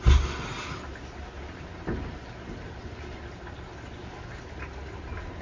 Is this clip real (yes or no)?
yes